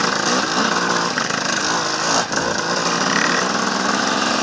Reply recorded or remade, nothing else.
recorded